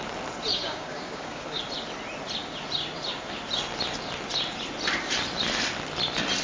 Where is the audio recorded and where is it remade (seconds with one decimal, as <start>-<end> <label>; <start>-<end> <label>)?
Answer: 0.0-0.5 recorded; 0.5-1.6 remade; 1.6-6.4 recorded